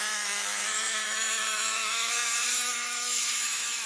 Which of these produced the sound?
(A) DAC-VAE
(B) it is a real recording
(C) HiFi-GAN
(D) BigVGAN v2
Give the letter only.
A